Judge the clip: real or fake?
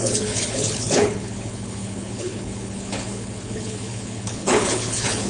fake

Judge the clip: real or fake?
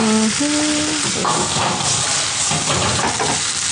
real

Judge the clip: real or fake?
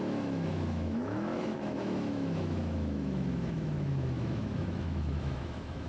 fake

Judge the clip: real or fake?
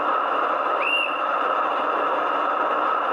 fake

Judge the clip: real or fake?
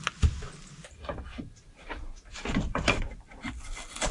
real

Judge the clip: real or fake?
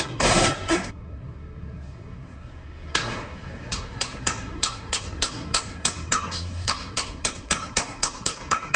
fake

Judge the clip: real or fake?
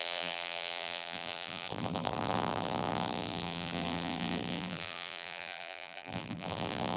fake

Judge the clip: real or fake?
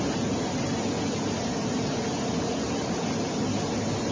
real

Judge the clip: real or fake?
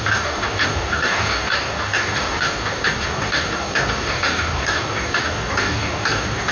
fake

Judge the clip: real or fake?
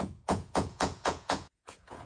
fake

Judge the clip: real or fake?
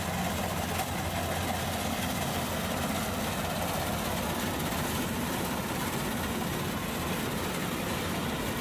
real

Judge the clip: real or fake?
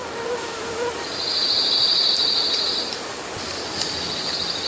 real